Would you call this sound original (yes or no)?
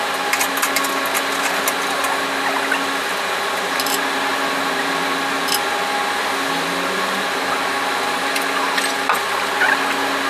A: yes